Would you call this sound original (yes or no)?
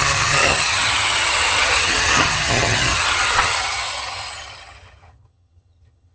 no